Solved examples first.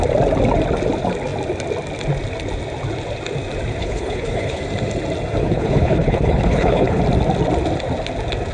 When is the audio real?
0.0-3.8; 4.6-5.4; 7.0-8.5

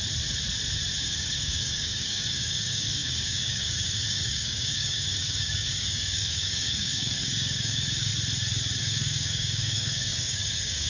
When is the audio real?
0.0-1.0; 8.1-8.8

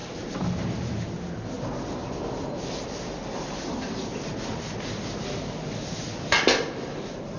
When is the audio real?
0.0-7.4

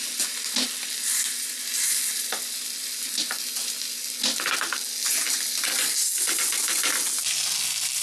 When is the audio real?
0.0-8.0

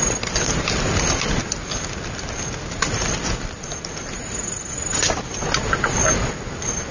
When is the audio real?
0.0-6.9